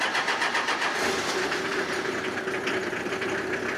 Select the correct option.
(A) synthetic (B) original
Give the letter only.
A